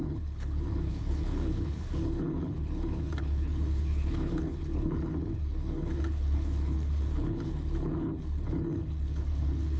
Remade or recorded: remade